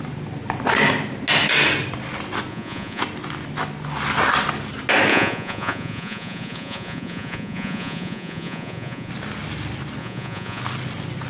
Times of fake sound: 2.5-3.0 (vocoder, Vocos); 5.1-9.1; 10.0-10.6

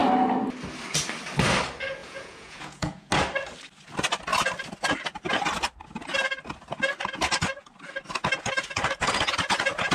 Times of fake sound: 2.0-3.1 (vocoder, Vocos)

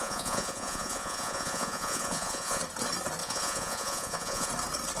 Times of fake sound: 0.0-2.6 (vocoder, Vocos); 3.2-4.5